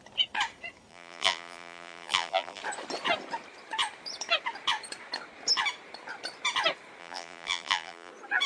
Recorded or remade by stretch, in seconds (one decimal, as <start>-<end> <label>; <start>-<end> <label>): 0.0-0.9 recorded; 0.9-2.6 remade; 2.6-7.0 recorded; 7.0-8.1 remade; 8.1-8.5 recorded